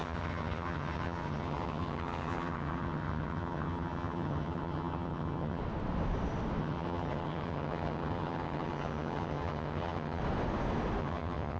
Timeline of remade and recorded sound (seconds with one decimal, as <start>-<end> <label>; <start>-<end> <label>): 0.0-5.6 remade; 5.6-6.6 recorded; 6.6-10.2 remade; 10.2-11.0 recorded; 11.0-11.6 remade